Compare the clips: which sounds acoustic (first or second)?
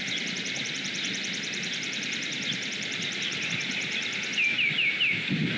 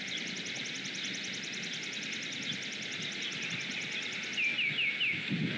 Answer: second